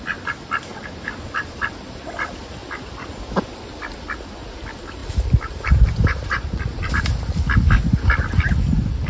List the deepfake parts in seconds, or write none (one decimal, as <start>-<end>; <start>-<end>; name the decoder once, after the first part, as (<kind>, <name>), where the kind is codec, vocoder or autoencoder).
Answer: 0.7-1.8 (vocoder, BigVGAN v2); 2.6-3.2; 5.0-7.3